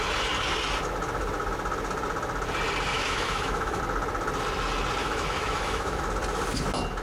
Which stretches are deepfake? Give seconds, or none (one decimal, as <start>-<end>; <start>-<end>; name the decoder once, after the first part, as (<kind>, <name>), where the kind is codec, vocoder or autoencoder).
2.9-3.8 (autoencoder, DAC-VAE); 5.0-6.0